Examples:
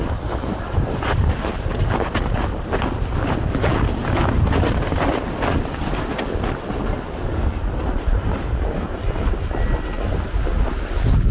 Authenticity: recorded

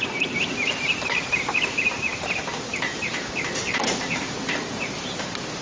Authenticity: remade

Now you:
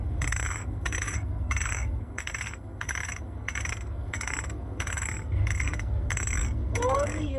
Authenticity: remade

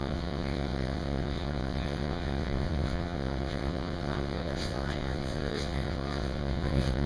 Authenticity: remade